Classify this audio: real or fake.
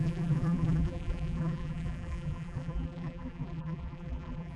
fake